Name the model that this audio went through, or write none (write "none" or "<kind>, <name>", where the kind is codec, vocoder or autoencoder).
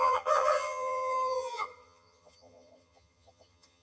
vocoder, HiFi-GAN